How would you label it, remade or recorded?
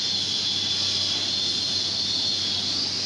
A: recorded